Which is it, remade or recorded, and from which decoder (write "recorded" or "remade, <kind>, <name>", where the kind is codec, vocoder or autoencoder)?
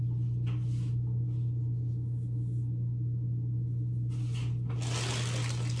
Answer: recorded